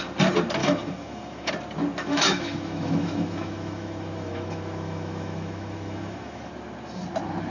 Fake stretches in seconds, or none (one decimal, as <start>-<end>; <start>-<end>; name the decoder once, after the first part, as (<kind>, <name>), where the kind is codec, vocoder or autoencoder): 0.6-1.5 (autoencoder, DAC-VAE); 2.0-6.5